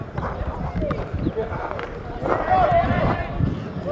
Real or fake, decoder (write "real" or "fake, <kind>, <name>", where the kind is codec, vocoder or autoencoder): real